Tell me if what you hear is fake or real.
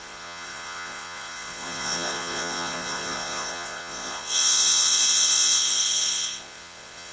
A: fake